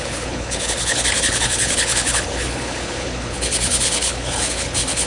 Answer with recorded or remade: remade